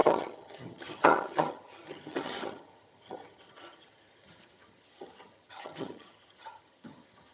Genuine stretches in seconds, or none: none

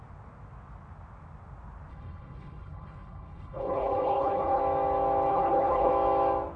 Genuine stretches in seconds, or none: 0.0-1.9; 4.6-5.3; 5.9-6.6

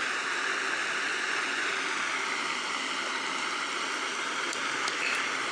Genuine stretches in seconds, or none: 0.0-1.1; 1.7-5.5